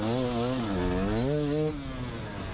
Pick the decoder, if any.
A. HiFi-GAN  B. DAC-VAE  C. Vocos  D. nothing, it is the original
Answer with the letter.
D